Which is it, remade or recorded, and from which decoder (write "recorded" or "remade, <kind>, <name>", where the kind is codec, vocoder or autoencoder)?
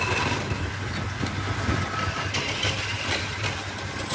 recorded